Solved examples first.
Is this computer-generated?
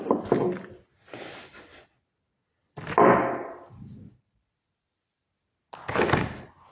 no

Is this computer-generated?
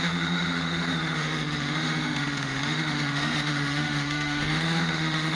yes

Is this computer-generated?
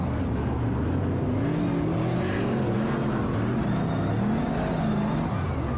no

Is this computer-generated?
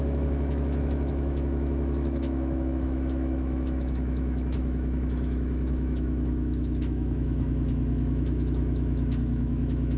yes